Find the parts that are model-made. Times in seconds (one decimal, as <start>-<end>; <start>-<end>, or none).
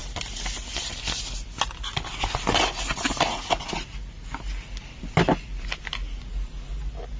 none